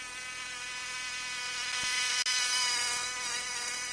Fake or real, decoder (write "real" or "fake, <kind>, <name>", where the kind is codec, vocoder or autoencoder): real